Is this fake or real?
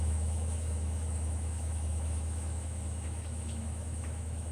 fake